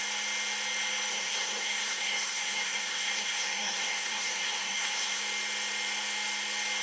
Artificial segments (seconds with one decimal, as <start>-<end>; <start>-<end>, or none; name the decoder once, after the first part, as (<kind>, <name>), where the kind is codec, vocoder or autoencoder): 1.1-5.2 (codec, SNAC)